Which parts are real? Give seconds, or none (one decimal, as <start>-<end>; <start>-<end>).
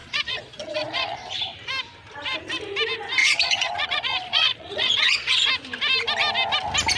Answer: 1.3-3.2; 5.5-7.0